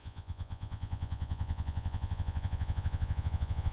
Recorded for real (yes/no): no